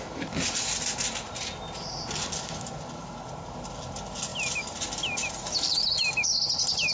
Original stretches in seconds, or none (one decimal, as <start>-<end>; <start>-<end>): 0.0-6.9